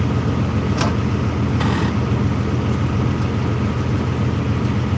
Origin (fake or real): real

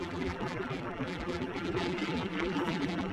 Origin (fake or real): fake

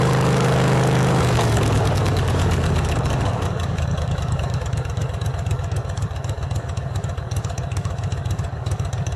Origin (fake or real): fake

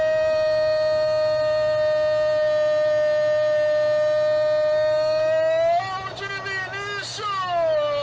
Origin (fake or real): real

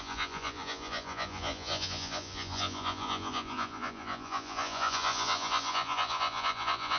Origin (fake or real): fake